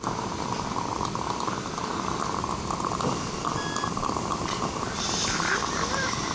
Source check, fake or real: fake